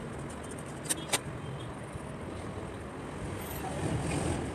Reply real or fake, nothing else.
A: real